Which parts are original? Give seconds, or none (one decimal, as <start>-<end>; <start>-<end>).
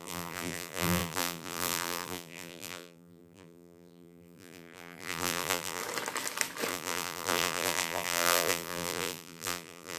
5.8-6.7